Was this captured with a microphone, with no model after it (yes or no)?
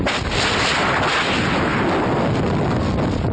yes